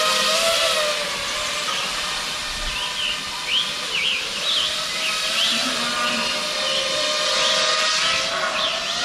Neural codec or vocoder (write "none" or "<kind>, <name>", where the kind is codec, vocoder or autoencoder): none